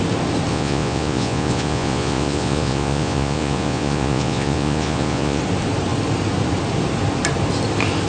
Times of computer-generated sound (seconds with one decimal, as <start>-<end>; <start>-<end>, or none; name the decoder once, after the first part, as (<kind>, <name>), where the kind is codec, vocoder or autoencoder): 0.5-5.4 (vocoder, Vocos)